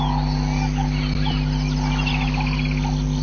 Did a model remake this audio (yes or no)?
no